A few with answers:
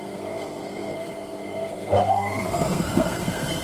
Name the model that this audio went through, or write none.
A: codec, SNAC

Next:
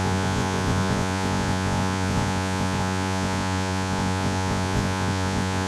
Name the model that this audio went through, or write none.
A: vocoder, Vocos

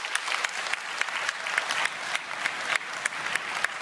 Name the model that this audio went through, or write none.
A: none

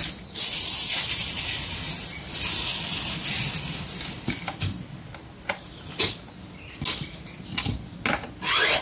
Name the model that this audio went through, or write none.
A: none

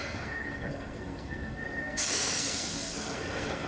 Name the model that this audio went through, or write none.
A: codec, SNAC